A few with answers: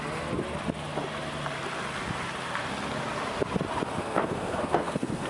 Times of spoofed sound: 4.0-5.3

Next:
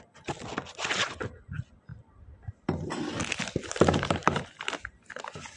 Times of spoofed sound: 1.9-3.7; 4.2-4.8

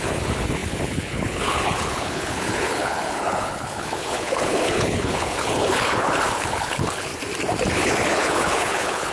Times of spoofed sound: 0.0-7.1; 7.7-9.1

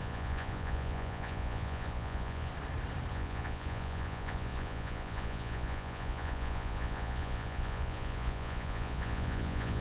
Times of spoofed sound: 0.0-2.5; 3.1-9.8